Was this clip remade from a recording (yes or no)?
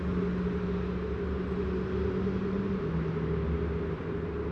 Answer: no